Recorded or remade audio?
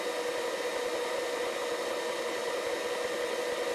recorded